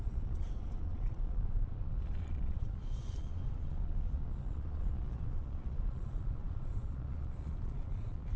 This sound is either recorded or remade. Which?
remade